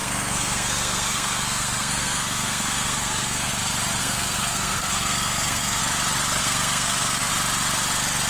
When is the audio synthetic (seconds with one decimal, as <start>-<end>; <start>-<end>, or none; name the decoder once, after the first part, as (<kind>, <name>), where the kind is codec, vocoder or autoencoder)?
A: 0.0-3.5 (codec, SNAC); 4.0-5.8; 6.4-7.3

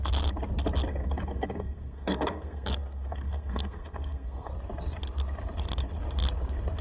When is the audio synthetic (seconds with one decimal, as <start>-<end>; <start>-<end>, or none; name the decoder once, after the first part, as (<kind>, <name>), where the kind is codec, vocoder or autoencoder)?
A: 0.9-4.5 (codec, SNAC)

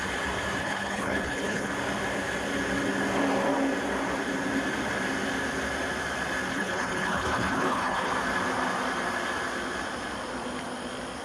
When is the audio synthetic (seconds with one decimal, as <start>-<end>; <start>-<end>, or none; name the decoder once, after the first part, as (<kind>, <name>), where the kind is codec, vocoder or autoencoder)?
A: 0.6-1.7 (codec, HILCodec); 6.5-8.1

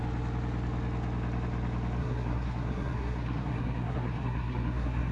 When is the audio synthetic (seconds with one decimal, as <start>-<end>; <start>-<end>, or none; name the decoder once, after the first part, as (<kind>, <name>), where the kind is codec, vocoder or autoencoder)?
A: 2.0-5.1 (codec, SNAC)

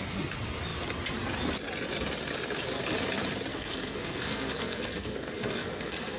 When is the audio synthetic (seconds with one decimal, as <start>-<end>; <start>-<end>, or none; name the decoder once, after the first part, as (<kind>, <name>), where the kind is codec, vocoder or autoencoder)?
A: 3.5-6.2 (codec, SNAC)